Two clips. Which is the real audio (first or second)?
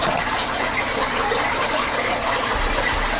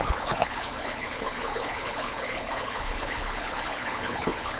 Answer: first